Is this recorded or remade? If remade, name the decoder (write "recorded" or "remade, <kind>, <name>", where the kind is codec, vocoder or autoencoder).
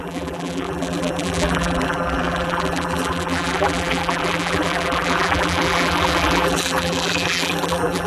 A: remade, vocoder, BigVGAN v2